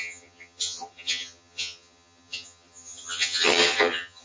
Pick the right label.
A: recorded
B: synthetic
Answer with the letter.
B